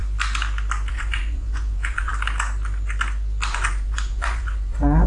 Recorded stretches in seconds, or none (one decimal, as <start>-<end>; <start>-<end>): 0.0-0.9; 2.1-3.5